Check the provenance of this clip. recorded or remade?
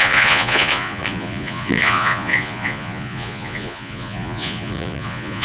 remade